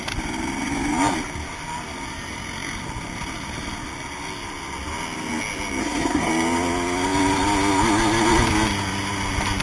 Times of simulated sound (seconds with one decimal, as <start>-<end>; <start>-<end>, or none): 5.8-6.3